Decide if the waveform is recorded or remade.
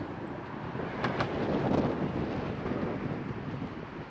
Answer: recorded